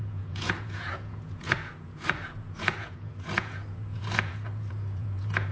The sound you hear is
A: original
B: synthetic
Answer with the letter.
B